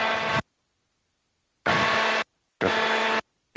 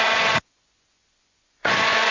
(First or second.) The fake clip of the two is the second